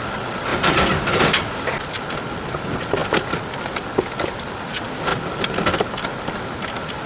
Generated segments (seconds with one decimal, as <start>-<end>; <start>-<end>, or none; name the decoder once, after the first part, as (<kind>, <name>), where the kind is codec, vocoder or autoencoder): 0.5-1.2 (vocoder, BigVGAN v2)